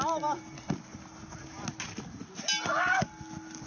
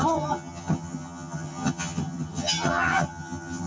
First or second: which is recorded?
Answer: first